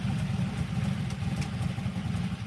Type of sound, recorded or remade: recorded